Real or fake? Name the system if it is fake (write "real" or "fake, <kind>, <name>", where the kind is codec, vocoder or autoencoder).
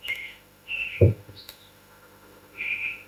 fake, autoencoder, DAC-VAE